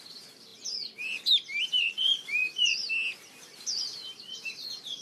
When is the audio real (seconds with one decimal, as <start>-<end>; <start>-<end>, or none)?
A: 2.8-3.6